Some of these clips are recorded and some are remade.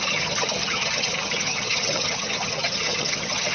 remade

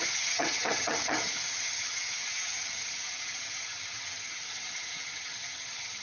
remade